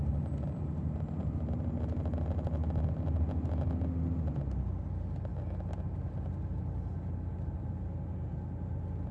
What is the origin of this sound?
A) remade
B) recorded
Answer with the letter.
B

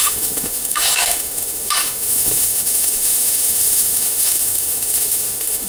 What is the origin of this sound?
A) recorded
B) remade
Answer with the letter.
B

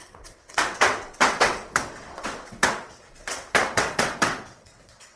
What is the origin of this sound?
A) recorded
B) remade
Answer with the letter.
B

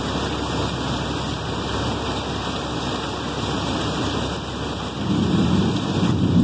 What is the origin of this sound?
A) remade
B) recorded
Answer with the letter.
B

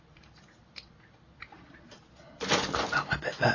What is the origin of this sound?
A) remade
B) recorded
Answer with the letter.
B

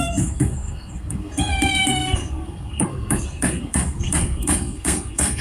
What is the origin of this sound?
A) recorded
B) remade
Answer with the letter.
B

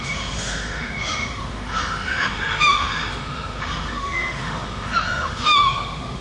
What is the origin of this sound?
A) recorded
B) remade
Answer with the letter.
B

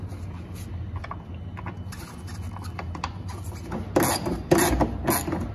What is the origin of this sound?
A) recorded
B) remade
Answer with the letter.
A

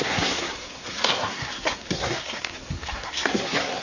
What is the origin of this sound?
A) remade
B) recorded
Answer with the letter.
A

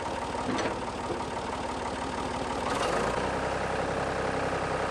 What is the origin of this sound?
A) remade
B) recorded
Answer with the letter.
B